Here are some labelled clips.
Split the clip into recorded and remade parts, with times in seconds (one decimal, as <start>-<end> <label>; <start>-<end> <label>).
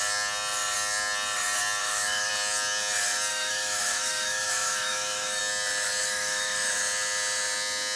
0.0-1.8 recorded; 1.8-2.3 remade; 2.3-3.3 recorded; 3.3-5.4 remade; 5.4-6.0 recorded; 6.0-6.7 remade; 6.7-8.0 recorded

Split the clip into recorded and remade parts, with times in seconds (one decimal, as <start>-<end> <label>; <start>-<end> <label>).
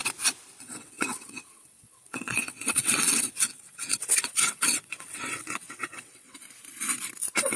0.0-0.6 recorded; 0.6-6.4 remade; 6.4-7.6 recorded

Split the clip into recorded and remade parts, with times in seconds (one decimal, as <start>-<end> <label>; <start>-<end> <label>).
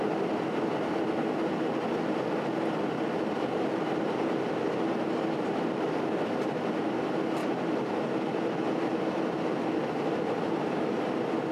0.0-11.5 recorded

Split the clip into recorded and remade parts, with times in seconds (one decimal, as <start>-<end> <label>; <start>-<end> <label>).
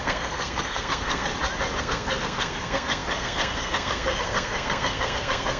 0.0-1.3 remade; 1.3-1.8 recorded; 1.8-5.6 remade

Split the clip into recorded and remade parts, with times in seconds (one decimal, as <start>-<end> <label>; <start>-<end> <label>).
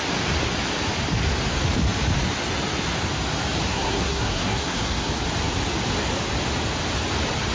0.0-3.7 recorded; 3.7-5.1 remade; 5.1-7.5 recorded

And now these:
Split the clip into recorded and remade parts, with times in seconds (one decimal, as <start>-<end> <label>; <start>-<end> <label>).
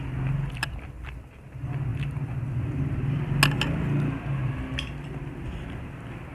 0.0-6.3 recorded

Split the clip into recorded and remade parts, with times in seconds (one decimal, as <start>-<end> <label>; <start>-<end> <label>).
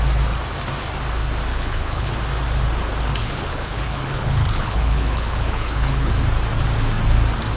0.0-1.5 recorded; 1.5-2.1 remade; 2.1-3.2 recorded; 3.2-6.1 remade; 6.1-7.6 recorded